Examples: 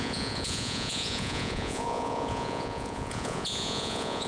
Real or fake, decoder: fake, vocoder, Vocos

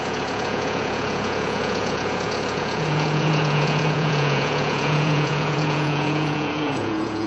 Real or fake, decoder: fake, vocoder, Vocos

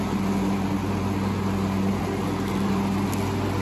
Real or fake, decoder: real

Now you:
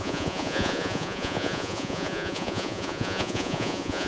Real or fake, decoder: fake, vocoder, Vocos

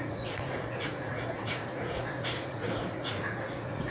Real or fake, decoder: fake, vocoder, Vocos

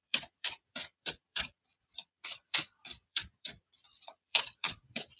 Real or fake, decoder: fake, vocoder, Vocos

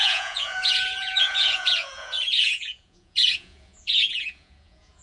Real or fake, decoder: fake, vocoder, Vocos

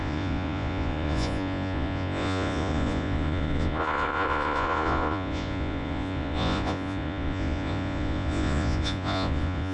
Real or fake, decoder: fake, vocoder, Vocos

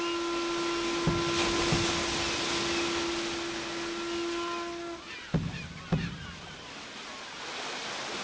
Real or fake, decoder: real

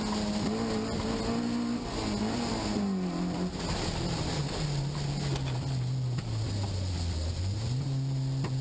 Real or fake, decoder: real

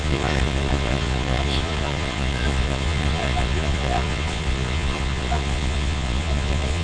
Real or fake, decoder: fake, vocoder, Vocos